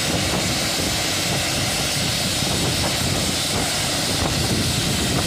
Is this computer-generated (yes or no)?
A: no